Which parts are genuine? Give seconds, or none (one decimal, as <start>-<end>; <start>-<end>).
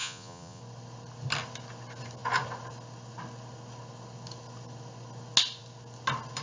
0.6-6.4